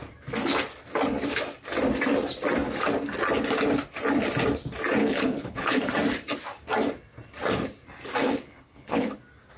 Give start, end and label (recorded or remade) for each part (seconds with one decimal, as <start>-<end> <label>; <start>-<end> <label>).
0.0-5.0 recorded; 5.0-5.9 remade; 5.9-8.2 recorded; 8.2-9.2 remade; 9.2-9.6 recorded